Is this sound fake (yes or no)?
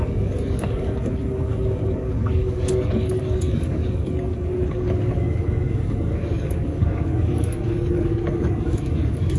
yes